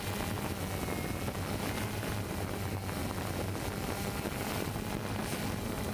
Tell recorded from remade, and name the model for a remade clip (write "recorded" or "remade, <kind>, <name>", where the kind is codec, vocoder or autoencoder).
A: recorded